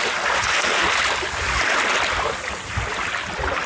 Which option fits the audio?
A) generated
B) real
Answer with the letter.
B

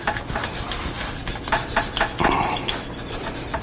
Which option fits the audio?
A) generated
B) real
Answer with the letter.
B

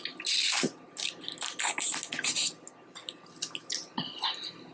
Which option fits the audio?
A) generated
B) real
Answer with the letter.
B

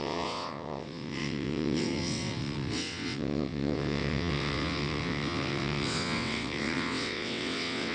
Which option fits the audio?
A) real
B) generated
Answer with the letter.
B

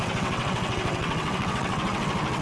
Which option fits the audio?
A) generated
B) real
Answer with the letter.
A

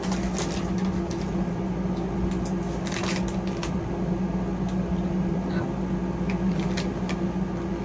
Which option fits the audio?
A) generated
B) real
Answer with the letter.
B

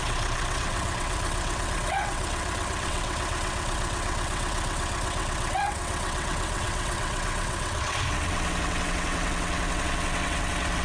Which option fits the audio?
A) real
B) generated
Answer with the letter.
B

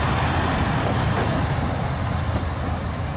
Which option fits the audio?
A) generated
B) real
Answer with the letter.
B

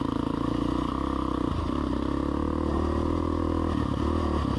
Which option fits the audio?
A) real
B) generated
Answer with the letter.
A